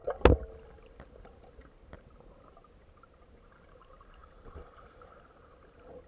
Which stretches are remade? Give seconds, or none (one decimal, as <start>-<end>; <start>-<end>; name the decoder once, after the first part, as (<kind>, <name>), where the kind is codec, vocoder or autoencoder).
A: 4.2-5.1 (vocoder, BigVGAN v2)